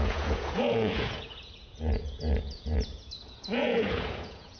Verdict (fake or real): fake